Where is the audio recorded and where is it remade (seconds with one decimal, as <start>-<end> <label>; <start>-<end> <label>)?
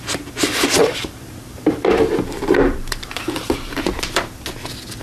0.0-0.8 recorded; 0.8-3.8 remade; 3.8-5.0 recorded